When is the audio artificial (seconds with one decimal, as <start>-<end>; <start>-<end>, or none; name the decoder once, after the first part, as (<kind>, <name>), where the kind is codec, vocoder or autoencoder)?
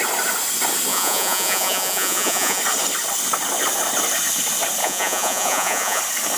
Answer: 0.9-2.6 (vocoder, Vocos); 4.8-6.0